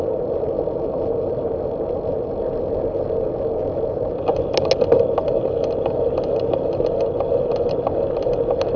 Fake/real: real